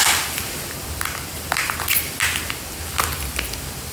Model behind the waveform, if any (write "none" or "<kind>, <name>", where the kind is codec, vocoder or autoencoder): none